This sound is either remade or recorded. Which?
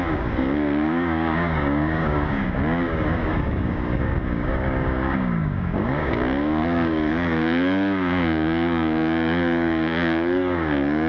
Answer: remade